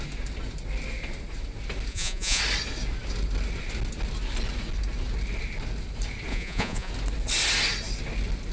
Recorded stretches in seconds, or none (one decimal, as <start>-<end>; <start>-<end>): 0.0-1.9; 2.4-6.3; 6.9-8.5